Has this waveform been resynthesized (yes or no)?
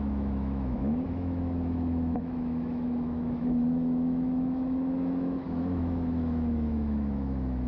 yes